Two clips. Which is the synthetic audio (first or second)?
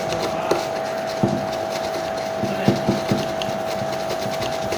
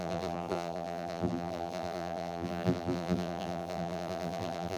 second